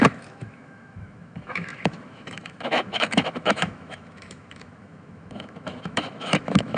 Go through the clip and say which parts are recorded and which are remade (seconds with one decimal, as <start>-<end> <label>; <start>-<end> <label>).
0.0-6.8 remade